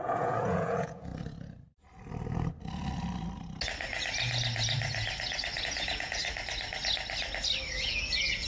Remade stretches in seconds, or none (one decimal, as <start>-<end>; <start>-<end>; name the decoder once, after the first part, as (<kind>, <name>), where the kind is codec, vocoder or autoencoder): 0.0-1.1 (vocoder, Vocos); 5.6-6.2; 7.7-8.5